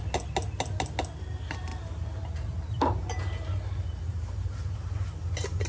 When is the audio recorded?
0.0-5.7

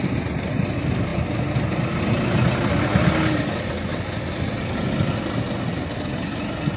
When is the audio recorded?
0.0-6.8